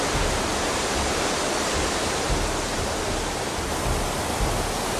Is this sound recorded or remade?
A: recorded